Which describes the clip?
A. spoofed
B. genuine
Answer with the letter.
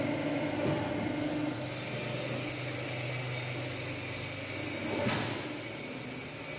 B